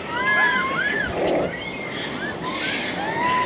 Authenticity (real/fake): real